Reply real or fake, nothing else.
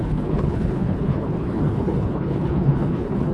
fake